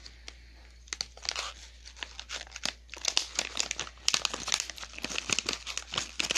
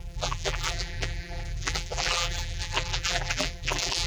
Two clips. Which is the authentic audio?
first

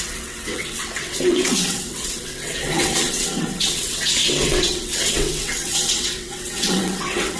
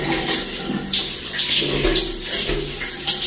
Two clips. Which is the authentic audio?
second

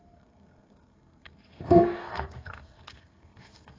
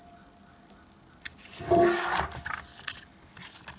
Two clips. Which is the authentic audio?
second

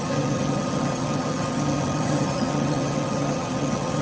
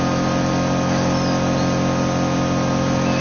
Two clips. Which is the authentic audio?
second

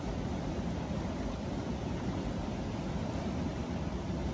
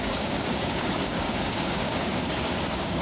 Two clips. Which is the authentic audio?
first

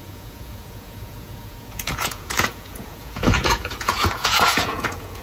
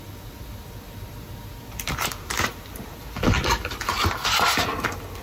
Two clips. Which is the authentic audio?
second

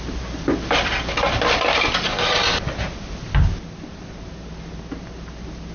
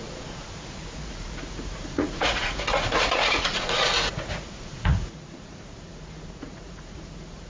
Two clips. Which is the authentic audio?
first